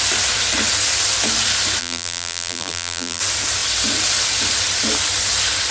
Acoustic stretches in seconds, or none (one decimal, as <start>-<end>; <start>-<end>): 0.0-1.8; 3.2-5.7